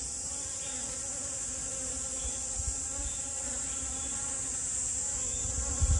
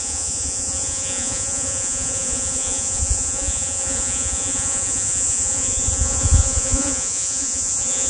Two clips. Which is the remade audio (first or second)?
second